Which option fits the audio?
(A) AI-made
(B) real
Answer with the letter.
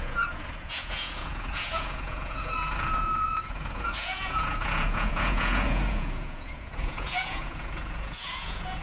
A